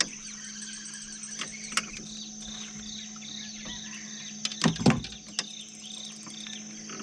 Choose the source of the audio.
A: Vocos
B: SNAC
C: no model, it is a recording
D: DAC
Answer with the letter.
C